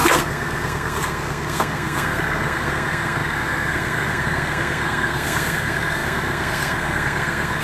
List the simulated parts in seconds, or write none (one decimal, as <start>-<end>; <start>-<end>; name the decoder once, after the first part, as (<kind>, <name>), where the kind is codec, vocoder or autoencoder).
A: 0.0-7.6 (codec, SNAC)